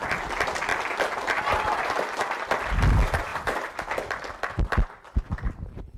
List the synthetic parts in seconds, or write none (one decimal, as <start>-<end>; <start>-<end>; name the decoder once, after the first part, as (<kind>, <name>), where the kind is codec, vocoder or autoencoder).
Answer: 3.3-4.7 (vocoder, BigVGAN v2)